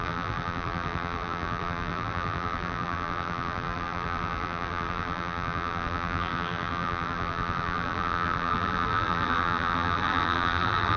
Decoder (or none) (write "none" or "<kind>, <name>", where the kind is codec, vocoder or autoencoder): vocoder, BigVGAN v2